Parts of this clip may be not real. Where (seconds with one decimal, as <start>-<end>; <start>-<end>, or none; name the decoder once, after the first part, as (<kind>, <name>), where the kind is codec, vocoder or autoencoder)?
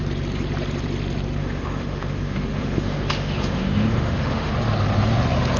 1.4-4.5 (autoencoder, DAC-VAE)